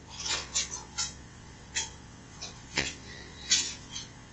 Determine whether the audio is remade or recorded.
remade